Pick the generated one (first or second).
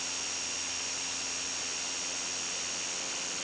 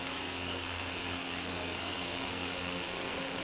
second